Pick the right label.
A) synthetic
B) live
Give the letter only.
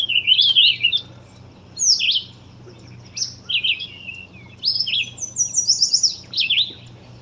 B